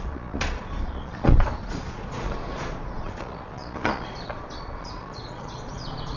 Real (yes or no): no